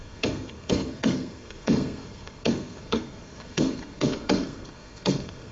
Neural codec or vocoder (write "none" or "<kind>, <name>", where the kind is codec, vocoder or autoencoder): codec, SNAC